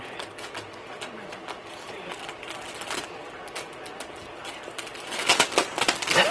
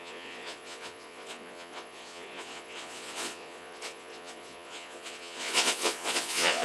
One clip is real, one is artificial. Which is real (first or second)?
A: first